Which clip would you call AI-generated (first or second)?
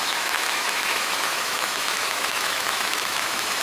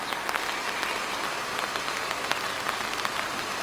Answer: first